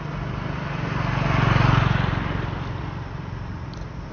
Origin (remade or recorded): recorded